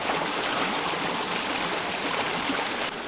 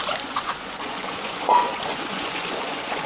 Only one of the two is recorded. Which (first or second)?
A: first